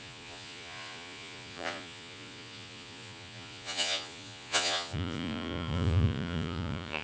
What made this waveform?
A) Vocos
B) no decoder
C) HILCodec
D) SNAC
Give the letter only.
A